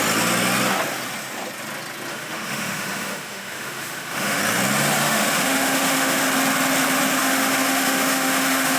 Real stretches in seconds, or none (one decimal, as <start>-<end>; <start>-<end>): 0.0-2.1; 4.4-5.0; 6.2-7.2